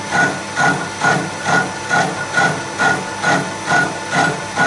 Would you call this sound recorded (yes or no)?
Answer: yes